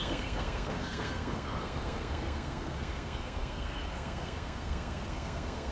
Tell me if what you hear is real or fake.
fake